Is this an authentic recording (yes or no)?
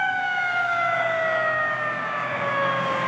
no